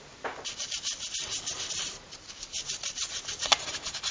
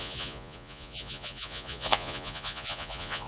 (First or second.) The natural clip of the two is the first